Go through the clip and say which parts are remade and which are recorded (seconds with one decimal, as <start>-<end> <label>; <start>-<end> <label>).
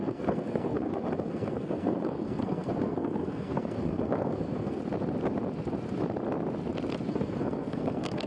0.0-4.8 remade; 4.8-7.1 recorded; 7.1-8.3 remade